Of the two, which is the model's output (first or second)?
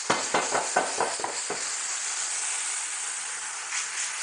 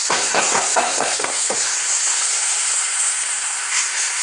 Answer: second